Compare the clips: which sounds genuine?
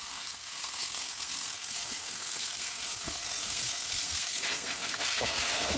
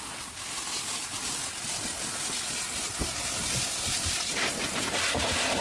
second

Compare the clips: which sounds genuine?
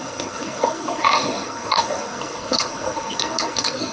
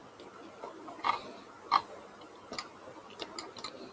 second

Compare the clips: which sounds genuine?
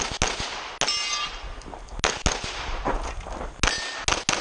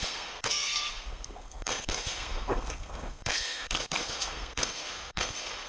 first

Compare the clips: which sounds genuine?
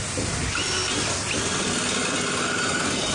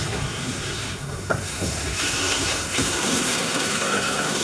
first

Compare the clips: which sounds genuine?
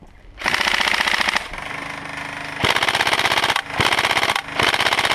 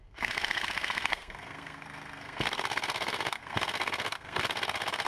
first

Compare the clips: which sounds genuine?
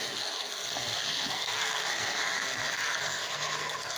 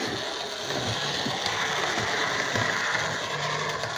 second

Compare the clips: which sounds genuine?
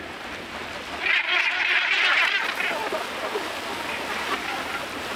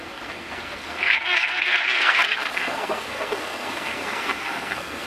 first